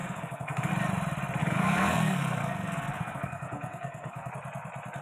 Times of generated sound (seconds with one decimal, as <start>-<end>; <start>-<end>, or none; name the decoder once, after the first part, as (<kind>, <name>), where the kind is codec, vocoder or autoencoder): 0.0-0.7 (codec, SNAC); 1.4-4.3